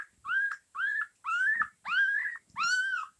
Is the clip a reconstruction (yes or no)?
no